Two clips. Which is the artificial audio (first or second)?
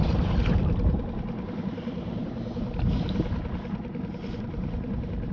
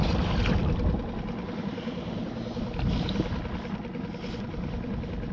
first